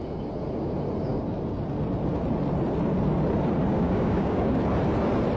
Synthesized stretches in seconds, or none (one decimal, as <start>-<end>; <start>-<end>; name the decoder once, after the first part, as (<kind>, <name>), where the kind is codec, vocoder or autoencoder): 3.7-4.6 (codec, DAC)